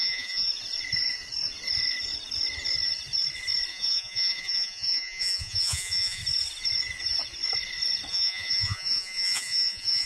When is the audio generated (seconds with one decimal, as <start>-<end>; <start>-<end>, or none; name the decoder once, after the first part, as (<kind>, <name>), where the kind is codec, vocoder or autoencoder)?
0.0-0.5 (vocoder, Vocos); 3.7-6.2; 8.1-10.1